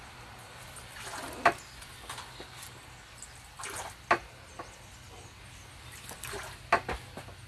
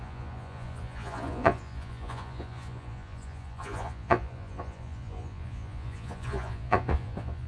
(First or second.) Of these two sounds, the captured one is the first